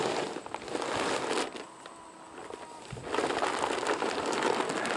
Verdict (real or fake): real